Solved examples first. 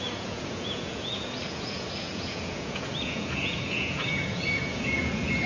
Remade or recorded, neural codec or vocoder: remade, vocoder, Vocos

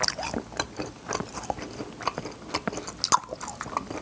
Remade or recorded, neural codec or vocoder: recorded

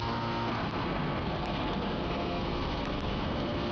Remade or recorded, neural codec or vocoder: remade, codec, SNAC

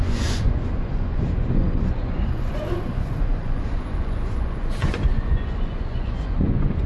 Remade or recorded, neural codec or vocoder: remade, vocoder, Vocos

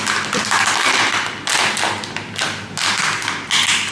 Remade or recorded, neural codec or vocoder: recorded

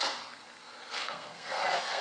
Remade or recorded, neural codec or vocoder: remade, codec, SNAC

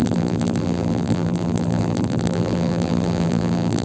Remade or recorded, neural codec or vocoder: remade, vocoder, BigVGAN v2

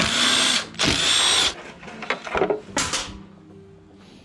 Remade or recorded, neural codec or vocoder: recorded